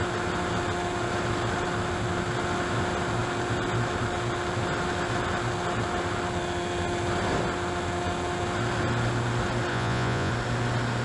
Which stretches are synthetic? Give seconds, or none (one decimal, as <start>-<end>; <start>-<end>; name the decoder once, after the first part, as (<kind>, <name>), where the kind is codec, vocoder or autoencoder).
9.7-10.3 (vocoder, Vocos)

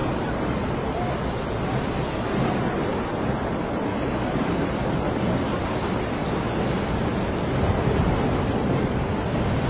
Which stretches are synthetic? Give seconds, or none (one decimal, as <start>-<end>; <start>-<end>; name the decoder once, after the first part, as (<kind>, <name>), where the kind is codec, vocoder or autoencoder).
none

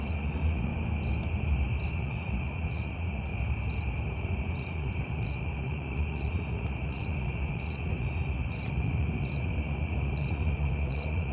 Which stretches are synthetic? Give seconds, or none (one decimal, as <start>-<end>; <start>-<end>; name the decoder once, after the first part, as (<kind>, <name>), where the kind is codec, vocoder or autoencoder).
0.0-0.7 (vocoder, Vocos); 1.9-3.3; 4.2-11.3

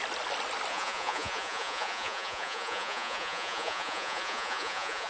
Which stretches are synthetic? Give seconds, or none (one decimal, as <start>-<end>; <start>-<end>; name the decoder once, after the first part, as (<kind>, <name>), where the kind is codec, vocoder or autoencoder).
0.7-5.1 (vocoder, Vocos)

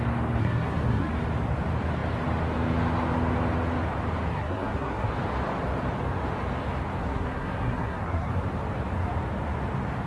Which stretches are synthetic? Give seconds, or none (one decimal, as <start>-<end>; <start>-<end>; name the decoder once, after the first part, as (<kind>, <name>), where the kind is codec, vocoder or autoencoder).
0.4-1.1 (codec, SNAC); 4.3-5.1; 7.0-8.3

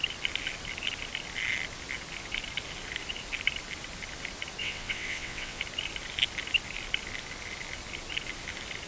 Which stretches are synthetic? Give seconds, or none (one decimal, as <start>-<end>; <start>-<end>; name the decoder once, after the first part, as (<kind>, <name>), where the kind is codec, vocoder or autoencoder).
4.6-5.6 (vocoder, WaveNeXt)

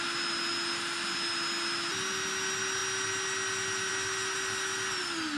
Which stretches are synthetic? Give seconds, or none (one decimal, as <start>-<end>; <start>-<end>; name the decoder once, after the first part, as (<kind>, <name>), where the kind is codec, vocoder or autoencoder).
none

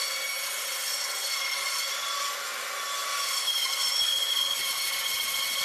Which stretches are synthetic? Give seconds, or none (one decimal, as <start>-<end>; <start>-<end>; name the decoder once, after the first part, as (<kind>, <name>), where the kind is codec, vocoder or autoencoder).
none